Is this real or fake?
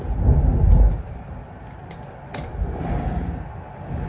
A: real